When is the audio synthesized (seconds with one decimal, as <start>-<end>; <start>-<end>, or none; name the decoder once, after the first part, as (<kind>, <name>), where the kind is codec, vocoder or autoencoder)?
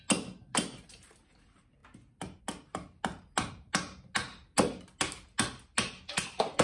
none